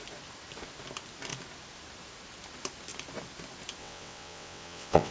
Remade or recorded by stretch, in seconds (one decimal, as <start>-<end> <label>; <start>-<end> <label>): 0.0-3.8 recorded; 3.8-5.1 remade